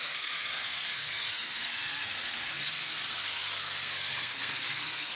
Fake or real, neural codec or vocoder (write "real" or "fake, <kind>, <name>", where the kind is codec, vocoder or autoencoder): fake, codec, SNAC